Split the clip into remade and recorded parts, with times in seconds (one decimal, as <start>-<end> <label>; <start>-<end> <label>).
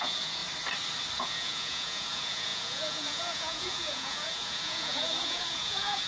0.0-0.4 remade; 0.4-1.2 recorded; 1.2-6.1 remade